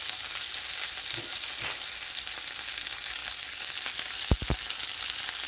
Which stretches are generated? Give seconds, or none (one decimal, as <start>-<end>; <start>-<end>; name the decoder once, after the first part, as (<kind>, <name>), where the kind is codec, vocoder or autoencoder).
none